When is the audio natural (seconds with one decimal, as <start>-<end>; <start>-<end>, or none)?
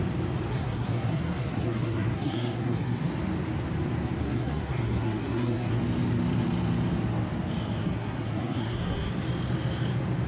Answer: 0.0-0.5; 3.1-4.2; 5.8-7.8; 9.1-10.3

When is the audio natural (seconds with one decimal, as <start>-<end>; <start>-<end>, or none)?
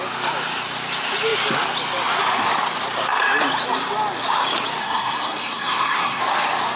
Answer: 0.0-4.8; 6.2-6.8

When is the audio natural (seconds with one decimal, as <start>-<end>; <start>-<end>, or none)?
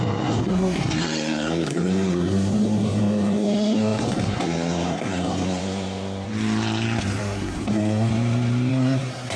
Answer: 5.6-7.2; 8.1-8.7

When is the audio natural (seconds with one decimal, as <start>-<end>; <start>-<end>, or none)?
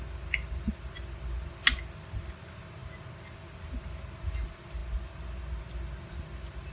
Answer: 0.0-6.7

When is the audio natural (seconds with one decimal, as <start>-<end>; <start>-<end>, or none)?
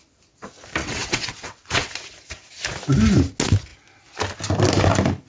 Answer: 0.0-0.8; 1.9-5.3